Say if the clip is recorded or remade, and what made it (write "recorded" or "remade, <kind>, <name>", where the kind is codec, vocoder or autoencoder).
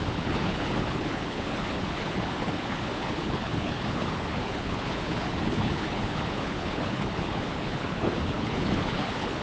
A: remade, codec, HILCodec